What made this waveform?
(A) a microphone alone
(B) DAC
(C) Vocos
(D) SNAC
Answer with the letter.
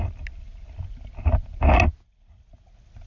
A